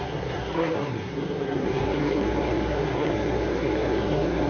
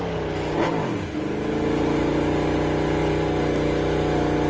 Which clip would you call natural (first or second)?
second